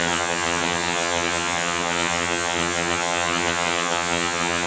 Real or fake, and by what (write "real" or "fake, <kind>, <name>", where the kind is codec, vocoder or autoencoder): fake, vocoder, HiFi-GAN